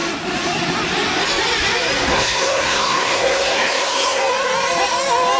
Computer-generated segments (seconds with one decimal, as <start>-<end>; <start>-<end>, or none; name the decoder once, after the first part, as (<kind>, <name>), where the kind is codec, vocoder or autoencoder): 2.1-4.2 (codec, SNAC)